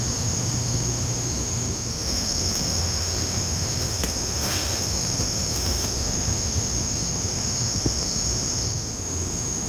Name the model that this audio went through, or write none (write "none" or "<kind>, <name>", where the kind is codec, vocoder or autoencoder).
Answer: autoencoder, DAC-VAE